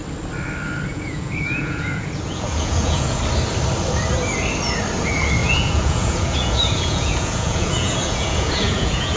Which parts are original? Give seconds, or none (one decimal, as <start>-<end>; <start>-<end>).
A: 0.0-0.9; 3.2-5.4